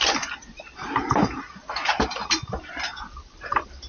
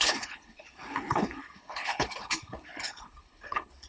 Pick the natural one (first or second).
first